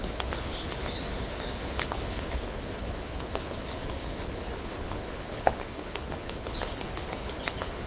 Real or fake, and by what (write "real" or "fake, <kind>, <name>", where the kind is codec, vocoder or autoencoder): fake, codec, HILCodec